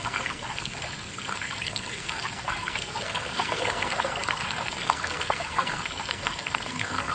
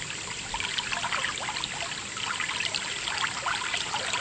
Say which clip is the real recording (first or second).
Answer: second